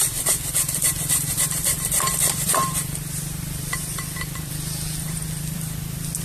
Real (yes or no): no